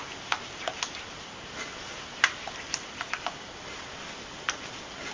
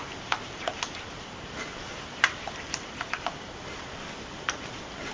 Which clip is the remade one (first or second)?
second